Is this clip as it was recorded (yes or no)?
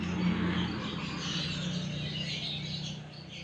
yes